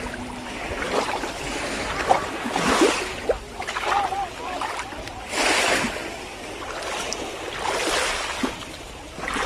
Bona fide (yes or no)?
yes